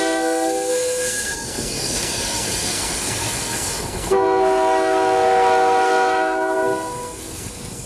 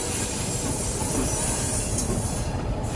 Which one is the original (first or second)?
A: second